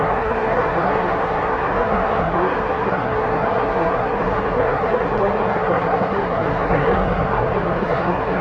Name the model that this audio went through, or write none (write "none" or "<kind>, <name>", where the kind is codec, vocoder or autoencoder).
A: codec, SNAC